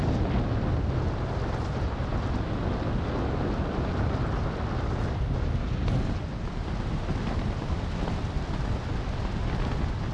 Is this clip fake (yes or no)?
no